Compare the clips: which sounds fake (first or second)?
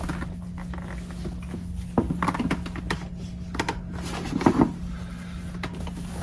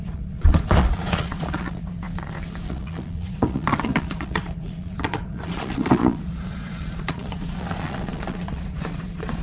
second